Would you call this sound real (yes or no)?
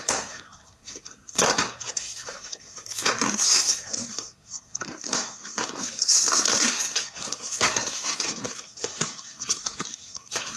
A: no